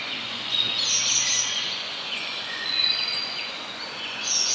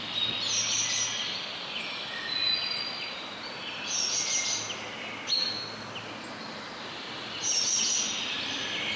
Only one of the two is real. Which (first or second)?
second